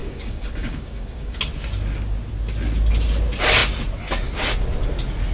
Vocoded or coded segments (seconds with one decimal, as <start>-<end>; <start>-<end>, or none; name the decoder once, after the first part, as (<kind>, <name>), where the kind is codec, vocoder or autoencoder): 0.0-1.4 (codec, DAC)